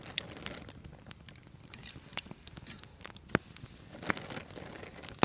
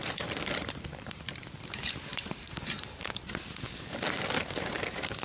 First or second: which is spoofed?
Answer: second